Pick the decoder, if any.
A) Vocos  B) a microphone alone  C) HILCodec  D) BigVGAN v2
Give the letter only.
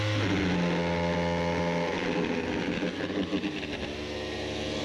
B